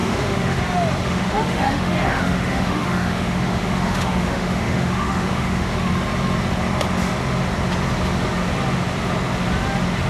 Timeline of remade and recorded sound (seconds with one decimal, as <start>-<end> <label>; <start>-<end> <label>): 0.0-0.6 remade; 0.6-1.0 recorded; 1.0-5.9 remade; 5.9-10.1 recorded